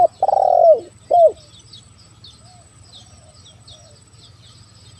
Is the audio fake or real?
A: real